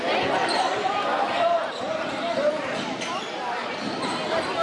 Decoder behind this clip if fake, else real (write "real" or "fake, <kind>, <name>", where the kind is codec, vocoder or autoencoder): real